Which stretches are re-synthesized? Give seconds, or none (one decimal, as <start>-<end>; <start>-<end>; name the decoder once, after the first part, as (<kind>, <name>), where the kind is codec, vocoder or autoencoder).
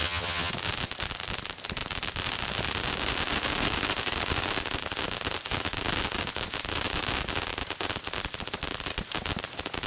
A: 0.0-0.5 (vocoder, HiFi-GAN)